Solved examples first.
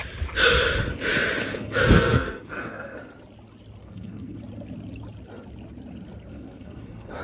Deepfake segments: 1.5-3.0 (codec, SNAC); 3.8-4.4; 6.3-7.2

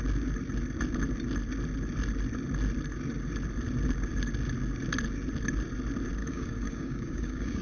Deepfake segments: 6.2-7.6 (codec, DAC)

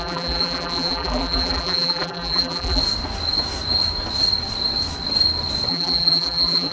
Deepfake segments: 0.0-2.8 (vocoder, BigVGAN v2); 5.7-6.7

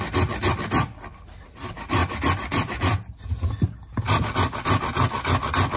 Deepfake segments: none

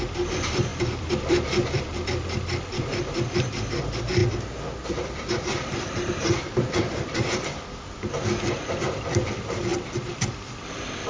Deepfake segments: 0.0-4.2 (vocoder, BigVGAN v2); 4.9-9.7; 10.7-11.1